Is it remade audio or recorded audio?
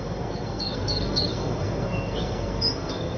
remade